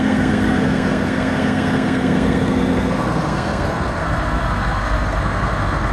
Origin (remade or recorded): remade